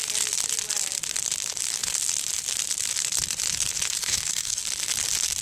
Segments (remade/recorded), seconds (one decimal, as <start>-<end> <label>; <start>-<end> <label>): 0.0-4.0 recorded; 4.0-4.6 remade; 4.6-5.4 recorded